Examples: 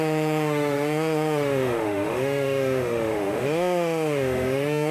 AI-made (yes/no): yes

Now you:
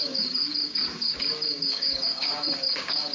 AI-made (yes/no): yes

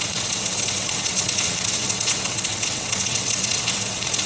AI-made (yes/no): yes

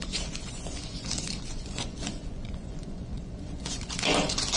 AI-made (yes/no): yes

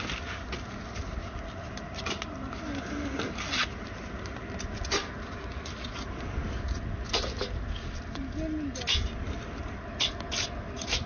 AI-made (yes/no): no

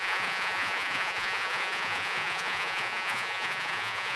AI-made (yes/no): yes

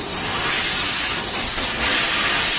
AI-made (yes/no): no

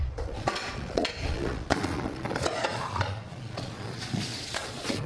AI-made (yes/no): yes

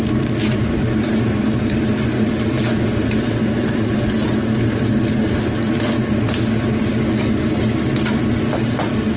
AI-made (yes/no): no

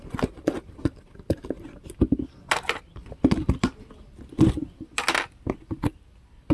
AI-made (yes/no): no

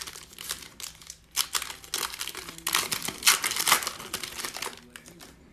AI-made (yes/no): no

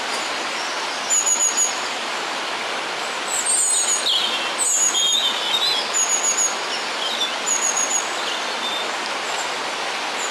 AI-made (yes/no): no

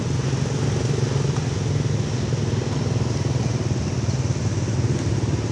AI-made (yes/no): no